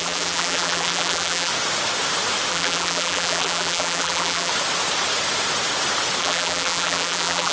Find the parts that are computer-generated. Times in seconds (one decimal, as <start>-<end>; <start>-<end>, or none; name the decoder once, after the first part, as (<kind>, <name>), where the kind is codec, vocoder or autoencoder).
0.0-1.5 (vocoder, BigVGAN v2); 2.5-4.5; 6.2-7.5